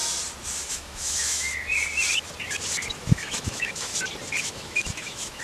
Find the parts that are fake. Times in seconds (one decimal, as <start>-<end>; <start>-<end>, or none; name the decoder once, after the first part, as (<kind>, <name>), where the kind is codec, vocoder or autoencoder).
0.7-1.5 (autoencoder, DAC-VAE); 2.9-3.9; 4.4-5.4